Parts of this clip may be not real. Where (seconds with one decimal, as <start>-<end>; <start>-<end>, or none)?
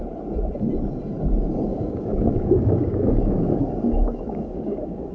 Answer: 1.7-5.1